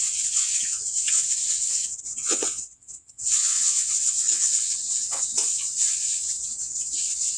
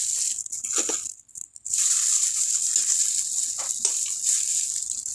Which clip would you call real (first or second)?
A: second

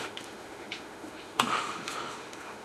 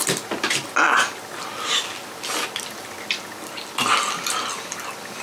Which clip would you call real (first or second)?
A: second